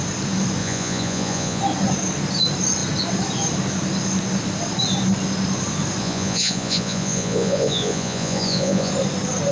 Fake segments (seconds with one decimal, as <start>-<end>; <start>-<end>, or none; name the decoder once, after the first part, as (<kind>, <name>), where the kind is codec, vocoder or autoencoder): 0.6-1.6 (vocoder, Vocos); 6.0-8.9